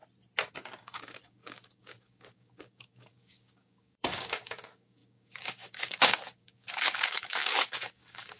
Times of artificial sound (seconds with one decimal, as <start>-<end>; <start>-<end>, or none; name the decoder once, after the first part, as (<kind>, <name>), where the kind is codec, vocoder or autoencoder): 0.5-8.4 (codec, DAC)